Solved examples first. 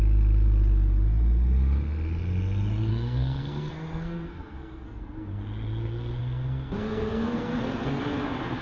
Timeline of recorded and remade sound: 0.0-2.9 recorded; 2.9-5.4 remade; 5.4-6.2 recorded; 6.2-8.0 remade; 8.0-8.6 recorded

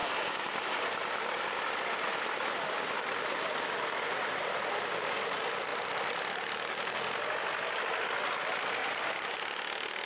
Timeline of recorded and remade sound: 0.0-3.6 remade; 3.6-8.8 recorded; 8.8-9.3 remade; 9.3-10.1 recorded

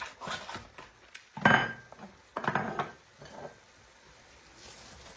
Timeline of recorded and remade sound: 0.0-5.2 recorded

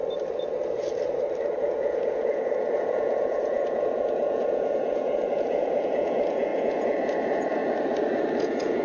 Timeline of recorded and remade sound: 0.0-1.6 recorded; 1.6-7.6 remade; 7.6-8.4 recorded; 8.4-8.8 remade

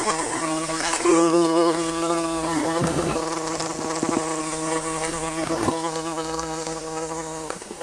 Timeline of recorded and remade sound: 0.0-3.2 remade; 3.2-4.4 recorded; 4.4-7.8 remade

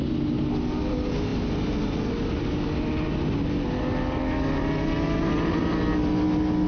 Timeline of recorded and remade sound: 0.0-6.7 recorded